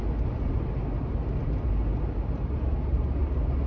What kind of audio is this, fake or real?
real